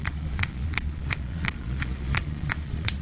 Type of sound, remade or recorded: remade